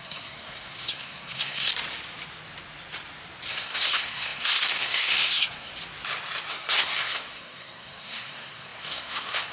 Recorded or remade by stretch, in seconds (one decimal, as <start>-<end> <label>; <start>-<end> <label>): 0.0-1.7 remade; 1.7-3.5 recorded; 3.5-5.7 remade; 5.7-6.5 recorded; 6.5-9.5 remade